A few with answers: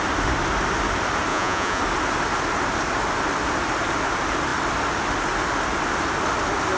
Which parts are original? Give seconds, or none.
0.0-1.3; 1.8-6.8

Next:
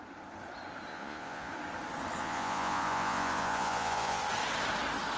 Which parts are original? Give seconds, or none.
0.0-0.9; 1.5-2.2; 4.2-5.2